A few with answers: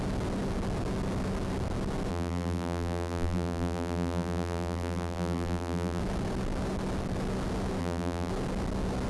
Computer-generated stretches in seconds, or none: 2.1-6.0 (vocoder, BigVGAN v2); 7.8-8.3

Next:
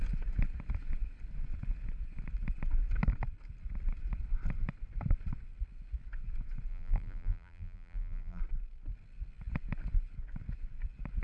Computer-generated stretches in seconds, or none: 6.7-8.4 (vocoder, BigVGAN v2)

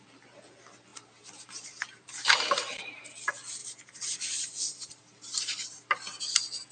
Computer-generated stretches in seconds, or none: 0.9-3.1 (vocoder, BigVGAN v2); 3.6-6.2

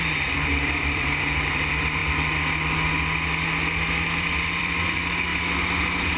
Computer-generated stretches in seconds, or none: 0.0-2.0 (vocoder, BigVGAN v2); 4.2-5.3

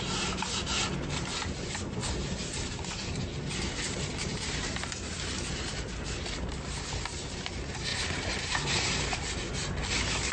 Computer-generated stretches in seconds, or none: 2.0-3.2 (vocoder, BigVGAN v2); 4.3-5.7; 7.9-9.0

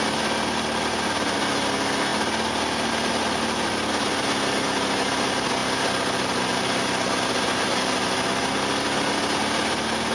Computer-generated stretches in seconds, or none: none